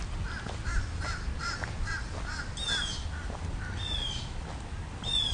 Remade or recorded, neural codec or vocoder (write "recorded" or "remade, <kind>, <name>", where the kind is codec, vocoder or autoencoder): recorded